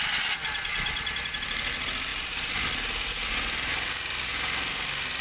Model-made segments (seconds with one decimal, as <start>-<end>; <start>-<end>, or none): 2.1-4.3